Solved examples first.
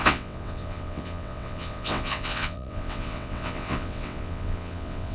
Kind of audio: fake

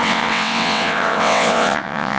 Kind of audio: fake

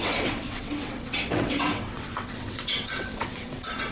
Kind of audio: fake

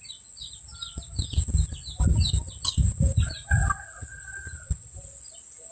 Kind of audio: real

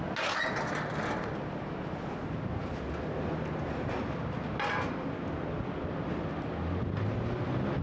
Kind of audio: real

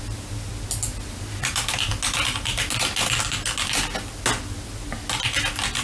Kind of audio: real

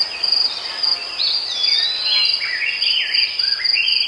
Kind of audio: real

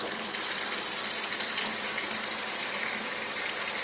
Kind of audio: real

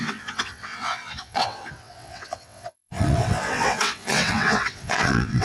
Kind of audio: fake